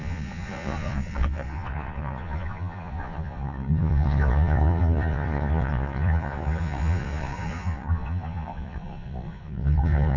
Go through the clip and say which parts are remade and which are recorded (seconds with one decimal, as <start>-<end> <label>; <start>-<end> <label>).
0.0-10.2 remade